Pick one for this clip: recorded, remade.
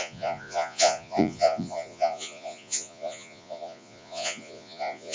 remade